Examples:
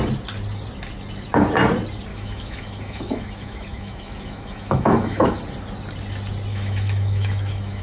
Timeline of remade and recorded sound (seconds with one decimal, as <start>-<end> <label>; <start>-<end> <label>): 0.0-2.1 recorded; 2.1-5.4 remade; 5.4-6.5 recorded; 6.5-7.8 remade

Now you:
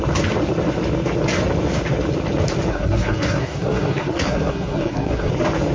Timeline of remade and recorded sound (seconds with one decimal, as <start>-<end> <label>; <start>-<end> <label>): 0.0-2.7 recorded; 2.7-5.3 remade; 5.3-5.7 recorded

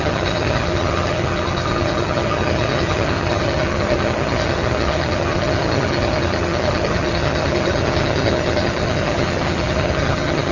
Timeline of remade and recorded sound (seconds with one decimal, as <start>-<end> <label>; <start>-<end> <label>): 0.0-10.5 remade

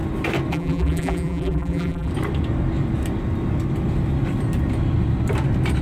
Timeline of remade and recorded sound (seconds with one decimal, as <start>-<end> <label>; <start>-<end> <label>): 0.0-0.5 recorded; 0.5-2.1 remade; 2.1-5.8 recorded

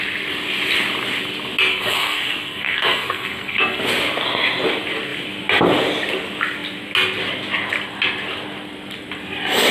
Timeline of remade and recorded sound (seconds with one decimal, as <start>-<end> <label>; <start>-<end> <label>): 0.0-1.7 recorded; 1.7-3.8 remade; 3.8-9.7 recorded

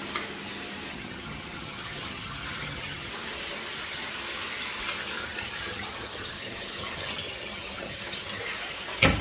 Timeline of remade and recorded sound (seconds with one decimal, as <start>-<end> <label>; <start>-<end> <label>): 0.0-0.9 recorded; 0.9-3.1 remade; 3.1-5.2 recorded; 5.2-8.4 remade; 8.4-9.2 recorded

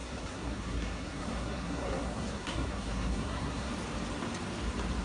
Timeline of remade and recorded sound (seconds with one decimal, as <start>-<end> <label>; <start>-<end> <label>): 0.0-3.7 remade; 3.7-5.0 recorded

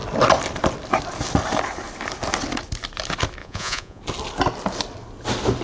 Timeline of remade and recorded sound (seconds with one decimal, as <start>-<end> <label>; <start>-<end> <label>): 0.0-3.4 recorded; 3.4-4.0 remade; 4.0-5.6 recorded